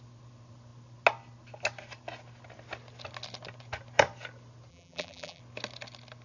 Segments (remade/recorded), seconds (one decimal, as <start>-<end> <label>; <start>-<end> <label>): 0.0-4.7 recorded; 4.7-5.4 remade; 5.4-6.2 recorded